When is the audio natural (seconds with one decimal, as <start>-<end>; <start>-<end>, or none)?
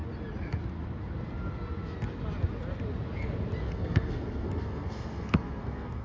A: 0.0-3.6